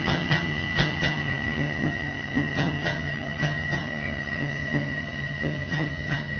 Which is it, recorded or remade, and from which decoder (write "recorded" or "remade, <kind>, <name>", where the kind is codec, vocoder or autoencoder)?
remade, vocoder, HiFi-GAN